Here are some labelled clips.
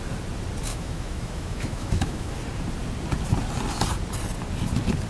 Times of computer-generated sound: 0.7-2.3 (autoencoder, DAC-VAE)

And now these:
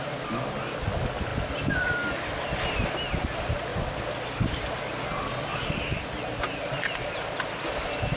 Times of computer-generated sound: none

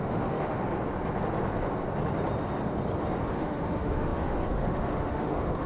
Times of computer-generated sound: 0.0-0.6 (autoencoder, DAC-VAE); 3.3-5.7

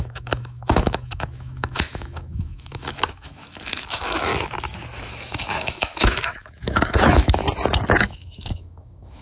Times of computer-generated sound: 0.0-4.3 (autoencoder, DAC-VAE); 5.1-7.4; 8.0-9.2